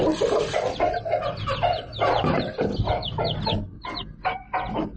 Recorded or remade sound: recorded